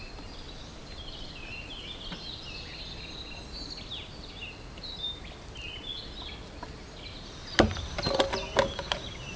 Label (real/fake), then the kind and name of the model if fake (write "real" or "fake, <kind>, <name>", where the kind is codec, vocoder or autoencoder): real